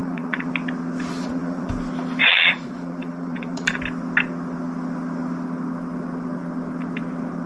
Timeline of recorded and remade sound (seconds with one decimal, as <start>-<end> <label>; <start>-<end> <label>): 0.0-0.5 remade; 0.5-1.1 recorded; 1.1-1.7 remade; 1.7-2.3 recorded; 2.3-3.8 remade; 3.8-7.5 recorded